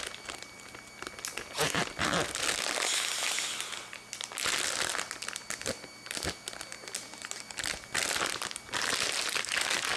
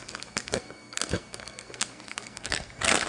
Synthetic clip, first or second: second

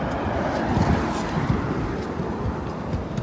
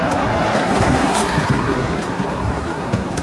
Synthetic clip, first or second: second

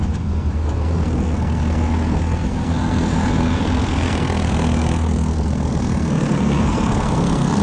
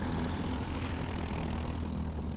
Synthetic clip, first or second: first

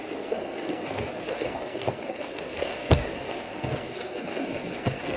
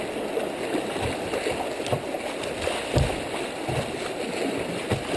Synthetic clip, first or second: first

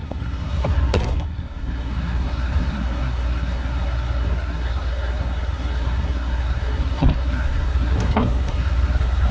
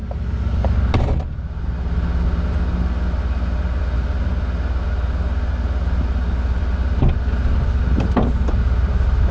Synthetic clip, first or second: first